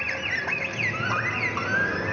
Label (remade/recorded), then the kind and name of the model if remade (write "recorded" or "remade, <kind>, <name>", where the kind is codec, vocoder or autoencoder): recorded